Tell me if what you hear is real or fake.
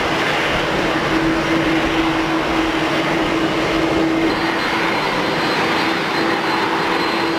real